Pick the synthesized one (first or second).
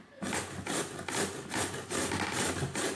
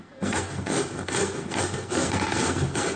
second